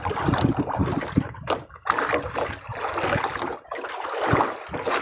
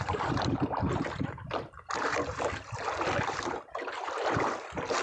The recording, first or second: first